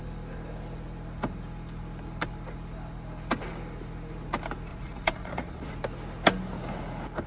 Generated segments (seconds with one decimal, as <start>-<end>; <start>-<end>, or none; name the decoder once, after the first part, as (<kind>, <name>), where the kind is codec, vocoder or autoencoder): 4.7-5.7 (vocoder, Vocos)